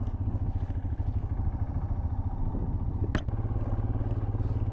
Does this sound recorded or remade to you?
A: recorded